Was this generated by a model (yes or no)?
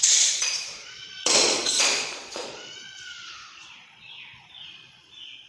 yes